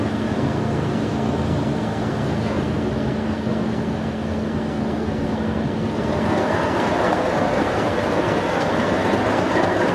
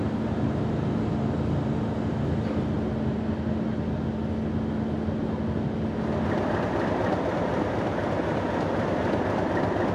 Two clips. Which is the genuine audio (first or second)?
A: second